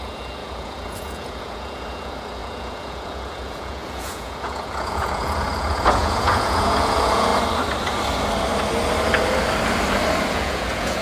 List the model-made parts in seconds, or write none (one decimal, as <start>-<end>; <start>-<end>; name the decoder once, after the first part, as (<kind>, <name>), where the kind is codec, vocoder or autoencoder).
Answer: 0.0-7.3 (vocoder, Vocos); 10.3-11.0

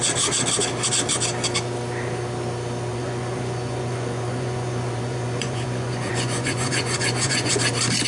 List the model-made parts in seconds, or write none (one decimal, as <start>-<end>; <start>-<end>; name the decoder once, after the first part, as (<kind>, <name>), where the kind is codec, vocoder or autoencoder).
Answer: 2.9-7.5 (vocoder, Vocos)

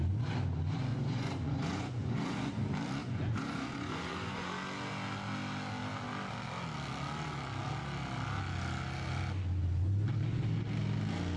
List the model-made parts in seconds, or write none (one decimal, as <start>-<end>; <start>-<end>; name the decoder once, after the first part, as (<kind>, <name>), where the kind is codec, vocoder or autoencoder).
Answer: 0.9-2.5 (vocoder, Vocos); 3.0-4.5

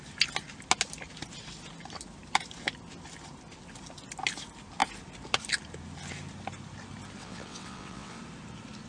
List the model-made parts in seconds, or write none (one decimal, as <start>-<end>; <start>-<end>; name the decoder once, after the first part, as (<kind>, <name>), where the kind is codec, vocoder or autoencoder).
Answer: 7.2-8.2 (vocoder, WaveNeXt)

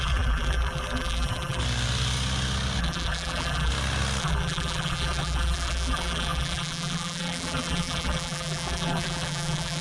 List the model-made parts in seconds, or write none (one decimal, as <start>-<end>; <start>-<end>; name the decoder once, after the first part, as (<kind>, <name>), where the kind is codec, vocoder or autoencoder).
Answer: 0.0-1.6 (vocoder, BigVGAN v2); 2.8-3.7; 4.2-9.8

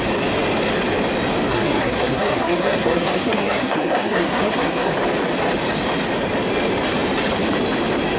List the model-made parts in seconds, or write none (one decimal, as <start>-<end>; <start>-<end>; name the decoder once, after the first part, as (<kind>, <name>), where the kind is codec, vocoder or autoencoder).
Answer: 1.5-4.9 (codec, SNAC)

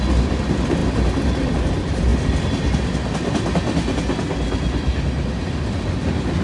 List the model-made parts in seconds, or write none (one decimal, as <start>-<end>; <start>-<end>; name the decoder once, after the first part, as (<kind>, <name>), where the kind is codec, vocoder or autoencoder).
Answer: none